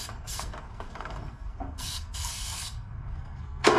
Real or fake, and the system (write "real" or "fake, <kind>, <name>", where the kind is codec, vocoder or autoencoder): fake, codec, SNAC